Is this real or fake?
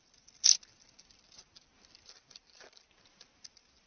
real